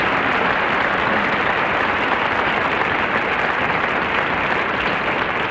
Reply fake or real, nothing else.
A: real